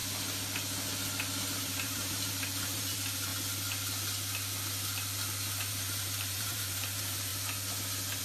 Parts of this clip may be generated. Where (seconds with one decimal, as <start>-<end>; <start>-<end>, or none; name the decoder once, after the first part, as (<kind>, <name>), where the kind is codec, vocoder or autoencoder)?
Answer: 1.6-3.3 (vocoder, BigVGAN v2); 5.7-7.3